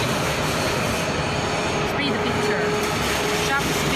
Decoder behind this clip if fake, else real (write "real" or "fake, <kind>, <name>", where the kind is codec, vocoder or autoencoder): real